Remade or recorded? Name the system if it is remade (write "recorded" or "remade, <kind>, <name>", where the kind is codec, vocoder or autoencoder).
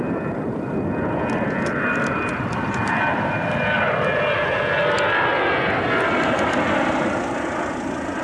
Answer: recorded